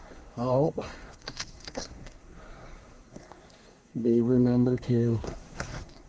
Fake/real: fake